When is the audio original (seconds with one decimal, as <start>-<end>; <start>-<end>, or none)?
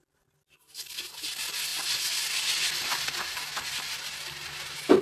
0.0-5.0